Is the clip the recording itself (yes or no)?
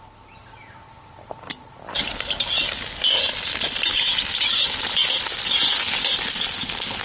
yes